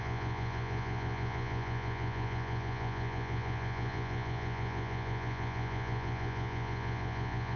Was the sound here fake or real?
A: fake